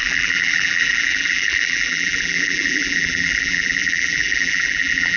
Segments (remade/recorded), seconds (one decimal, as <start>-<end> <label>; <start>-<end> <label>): 0.0-5.2 remade